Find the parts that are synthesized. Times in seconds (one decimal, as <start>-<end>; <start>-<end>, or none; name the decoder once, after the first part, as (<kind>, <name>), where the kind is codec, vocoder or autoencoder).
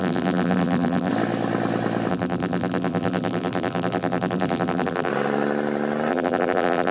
0.0-1.1 (vocoder, BigVGAN v2); 2.1-5.1; 6.1-6.9